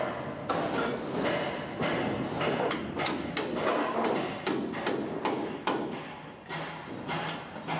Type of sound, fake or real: real